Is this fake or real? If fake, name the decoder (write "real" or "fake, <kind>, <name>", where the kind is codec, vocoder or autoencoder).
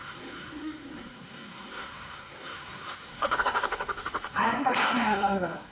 fake, codec, SNAC